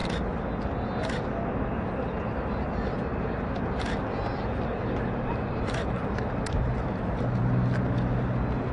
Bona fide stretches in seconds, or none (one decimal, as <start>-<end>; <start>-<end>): 0.0-8.7

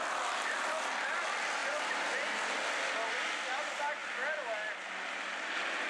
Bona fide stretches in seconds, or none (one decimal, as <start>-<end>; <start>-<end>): 0.0-5.9

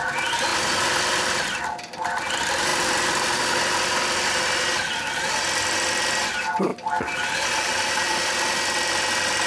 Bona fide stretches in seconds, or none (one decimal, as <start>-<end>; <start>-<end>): 0.0-9.5

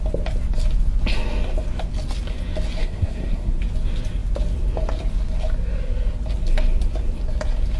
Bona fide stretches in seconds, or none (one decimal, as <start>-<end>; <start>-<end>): 0.0-2.8; 3.5-7.8